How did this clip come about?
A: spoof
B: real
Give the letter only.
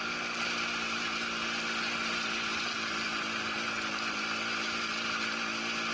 B